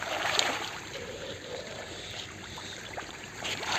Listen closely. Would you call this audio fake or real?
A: fake